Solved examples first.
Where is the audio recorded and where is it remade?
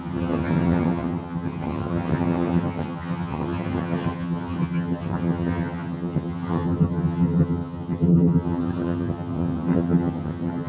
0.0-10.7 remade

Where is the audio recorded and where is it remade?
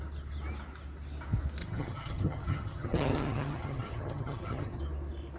0.0-1.6 recorded; 1.6-4.8 remade; 4.8-5.4 recorded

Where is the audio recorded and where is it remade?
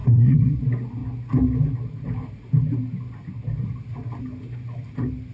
0.0-0.6 remade; 0.6-5.3 recorded